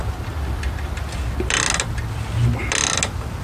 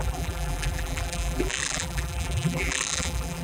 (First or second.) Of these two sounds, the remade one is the second